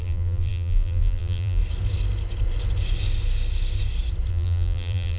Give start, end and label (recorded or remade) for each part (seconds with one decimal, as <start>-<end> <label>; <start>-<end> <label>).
0.0-1.6 remade; 1.6-4.3 recorded; 4.3-5.2 remade